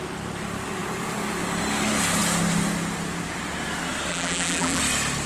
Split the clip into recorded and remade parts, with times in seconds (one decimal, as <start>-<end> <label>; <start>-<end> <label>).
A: 0.0-4.1 recorded; 4.1-4.8 remade; 4.8-5.3 recorded